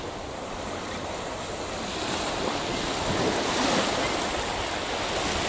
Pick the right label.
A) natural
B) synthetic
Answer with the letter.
A